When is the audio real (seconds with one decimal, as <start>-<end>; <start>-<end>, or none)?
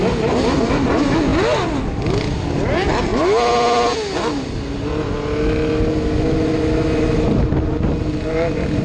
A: 0.0-8.8